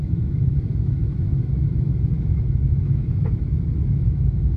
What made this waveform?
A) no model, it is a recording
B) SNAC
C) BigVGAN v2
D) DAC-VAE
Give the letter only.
D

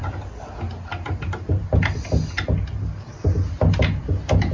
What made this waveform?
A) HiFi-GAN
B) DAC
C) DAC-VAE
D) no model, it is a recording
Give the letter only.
D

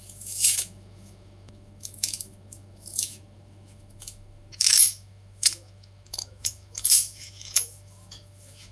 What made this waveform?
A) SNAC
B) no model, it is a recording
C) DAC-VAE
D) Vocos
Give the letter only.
C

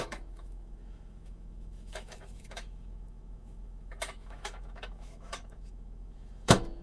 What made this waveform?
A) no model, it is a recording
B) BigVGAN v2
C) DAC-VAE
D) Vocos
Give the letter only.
C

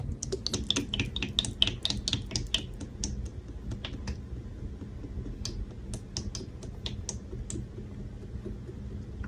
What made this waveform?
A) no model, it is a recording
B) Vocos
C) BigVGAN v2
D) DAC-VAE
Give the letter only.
A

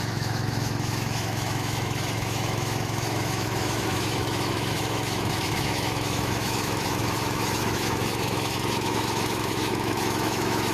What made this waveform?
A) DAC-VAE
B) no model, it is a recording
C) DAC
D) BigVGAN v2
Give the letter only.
A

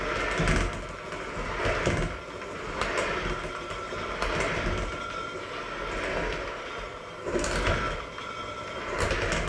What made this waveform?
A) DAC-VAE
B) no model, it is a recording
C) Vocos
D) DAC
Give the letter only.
B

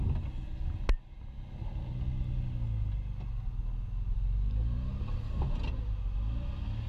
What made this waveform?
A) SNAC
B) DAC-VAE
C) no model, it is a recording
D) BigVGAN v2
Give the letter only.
C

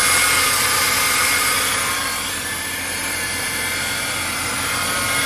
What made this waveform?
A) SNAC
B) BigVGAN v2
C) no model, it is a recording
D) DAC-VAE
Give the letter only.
C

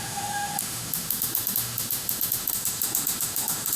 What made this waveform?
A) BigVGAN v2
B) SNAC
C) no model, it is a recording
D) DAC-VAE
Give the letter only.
D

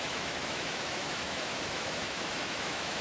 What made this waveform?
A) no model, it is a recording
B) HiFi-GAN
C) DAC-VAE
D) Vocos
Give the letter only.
C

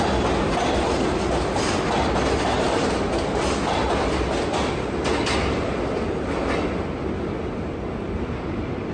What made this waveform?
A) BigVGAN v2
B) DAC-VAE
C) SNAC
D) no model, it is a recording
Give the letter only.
D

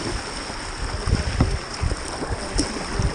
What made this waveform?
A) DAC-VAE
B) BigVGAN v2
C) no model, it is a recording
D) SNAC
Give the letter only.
C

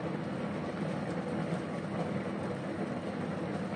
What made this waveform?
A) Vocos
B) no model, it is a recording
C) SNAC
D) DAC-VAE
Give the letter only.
B